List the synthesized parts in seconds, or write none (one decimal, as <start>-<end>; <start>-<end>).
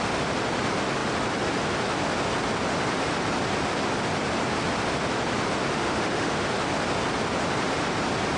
5.7-6.3